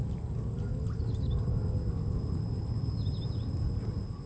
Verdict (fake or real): real